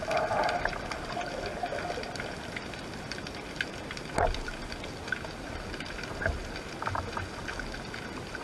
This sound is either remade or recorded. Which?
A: recorded